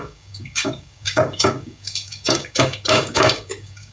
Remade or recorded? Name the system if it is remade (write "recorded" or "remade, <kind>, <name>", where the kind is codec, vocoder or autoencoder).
remade, codec, DAC